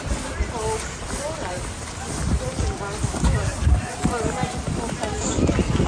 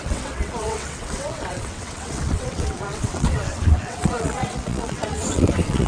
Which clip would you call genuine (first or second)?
first